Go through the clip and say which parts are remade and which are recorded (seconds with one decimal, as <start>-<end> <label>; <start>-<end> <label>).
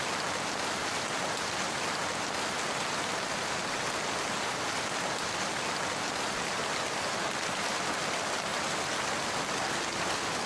0.0-10.5 recorded